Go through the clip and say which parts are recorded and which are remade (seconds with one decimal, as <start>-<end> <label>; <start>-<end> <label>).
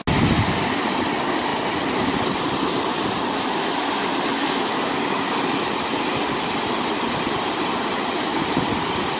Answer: 0.0-8.3 recorded; 8.3-9.2 remade